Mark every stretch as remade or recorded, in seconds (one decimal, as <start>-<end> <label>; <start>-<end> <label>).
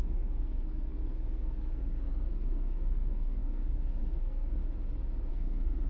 0.0-4.6 remade; 4.6-5.3 recorded; 5.3-5.9 remade